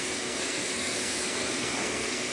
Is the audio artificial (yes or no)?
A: yes